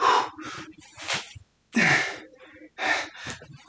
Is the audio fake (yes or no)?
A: no